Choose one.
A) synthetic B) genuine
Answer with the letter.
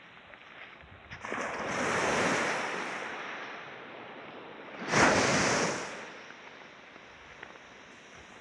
B